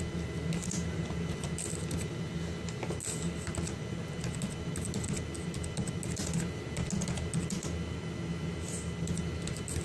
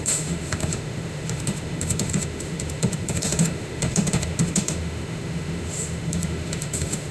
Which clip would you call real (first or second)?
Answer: first